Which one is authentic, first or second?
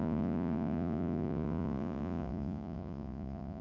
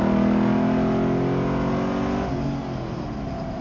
second